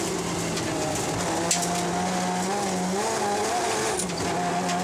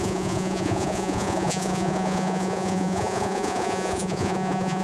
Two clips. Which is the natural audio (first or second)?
first